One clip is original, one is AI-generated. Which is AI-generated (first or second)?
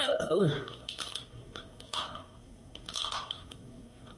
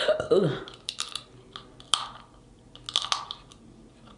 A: first